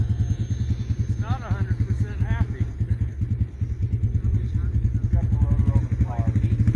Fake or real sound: real